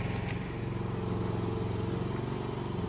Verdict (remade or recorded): recorded